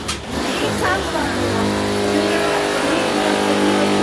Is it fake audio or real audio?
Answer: real